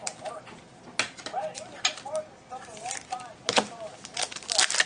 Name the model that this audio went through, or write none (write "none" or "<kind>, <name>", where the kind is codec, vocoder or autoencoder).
none